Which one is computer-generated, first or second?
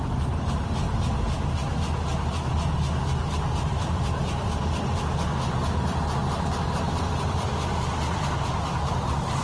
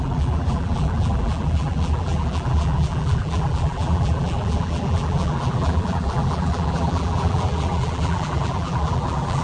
second